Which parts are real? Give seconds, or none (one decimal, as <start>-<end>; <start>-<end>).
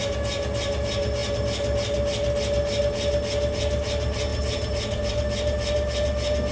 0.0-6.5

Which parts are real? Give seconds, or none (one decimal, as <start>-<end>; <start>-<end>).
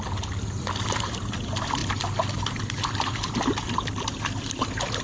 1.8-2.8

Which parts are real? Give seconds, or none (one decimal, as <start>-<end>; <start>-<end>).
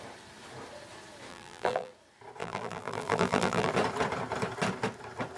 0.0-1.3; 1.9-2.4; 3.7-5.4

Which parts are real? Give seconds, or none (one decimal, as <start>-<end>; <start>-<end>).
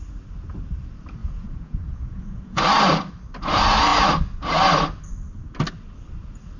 0.0-1.2; 2.6-6.6